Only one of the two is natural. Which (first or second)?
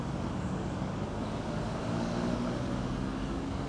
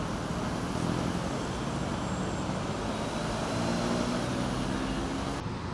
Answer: second